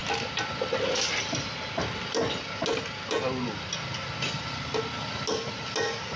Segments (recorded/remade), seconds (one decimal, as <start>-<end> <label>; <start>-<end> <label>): 0.0-6.2 recorded